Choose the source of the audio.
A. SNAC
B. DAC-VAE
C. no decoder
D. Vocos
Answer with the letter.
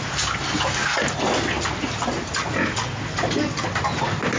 C